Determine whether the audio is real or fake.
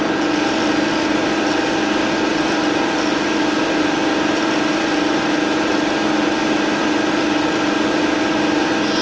real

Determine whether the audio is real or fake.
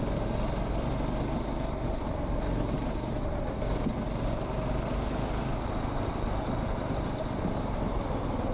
real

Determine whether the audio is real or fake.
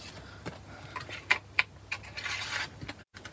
real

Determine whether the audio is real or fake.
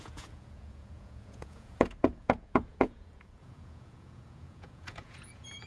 fake